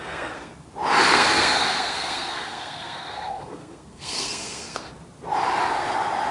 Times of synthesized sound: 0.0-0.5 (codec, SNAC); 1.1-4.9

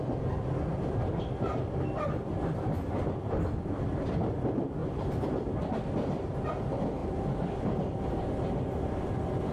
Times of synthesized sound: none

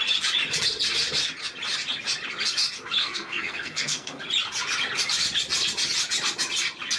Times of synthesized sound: 3.0-4.2 (codec, SNAC)

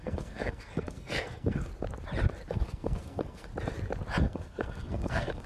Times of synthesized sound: 0.0-1.7 (codec, SNAC); 2.5-3.5; 4.2-5.5

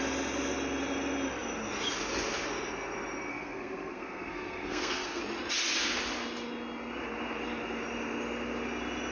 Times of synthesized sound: 3.3-5.2 (codec, SNAC)

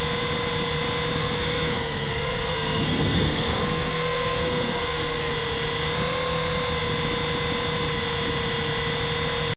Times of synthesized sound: 1.2-5.3 (codec, SNAC)

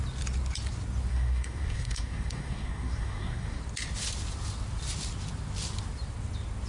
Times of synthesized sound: 1.1-3.6 (codec, SNAC)